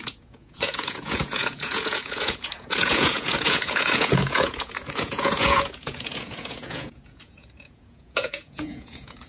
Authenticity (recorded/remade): remade